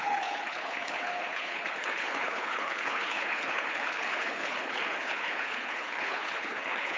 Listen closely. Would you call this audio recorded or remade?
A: remade